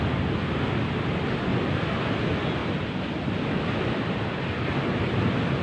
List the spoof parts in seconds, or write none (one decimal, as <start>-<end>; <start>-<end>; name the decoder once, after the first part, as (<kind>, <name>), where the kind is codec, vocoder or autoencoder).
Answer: none